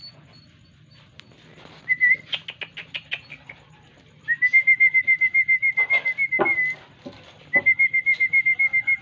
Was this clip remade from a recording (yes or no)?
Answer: no